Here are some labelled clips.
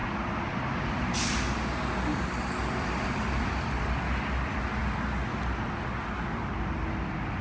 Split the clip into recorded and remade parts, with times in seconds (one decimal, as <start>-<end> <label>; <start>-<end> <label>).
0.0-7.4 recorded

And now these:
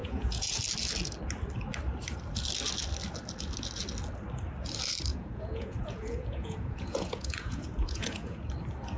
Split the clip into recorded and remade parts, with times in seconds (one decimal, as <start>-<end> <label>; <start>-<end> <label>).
0.0-0.6 remade; 0.6-5.1 recorded; 5.1-8.5 remade; 8.5-9.0 recorded

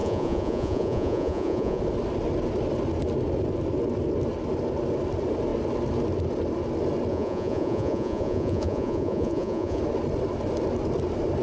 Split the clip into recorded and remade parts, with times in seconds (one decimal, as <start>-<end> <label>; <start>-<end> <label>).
0.0-1.8 remade; 1.8-7.1 recorded; 7.1-9.8 remade; 9.8-11.4 recorded

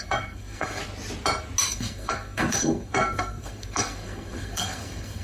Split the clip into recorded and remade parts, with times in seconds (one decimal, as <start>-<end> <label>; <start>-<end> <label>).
0.0-0.8 remade; 0.8-1.7 recorded; 1.7-5.2 remade